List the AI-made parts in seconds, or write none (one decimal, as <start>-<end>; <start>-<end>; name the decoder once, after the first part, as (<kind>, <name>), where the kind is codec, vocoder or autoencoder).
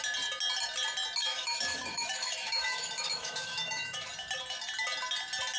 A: 1.2-4.1 (autoencoder, DAC-VAE)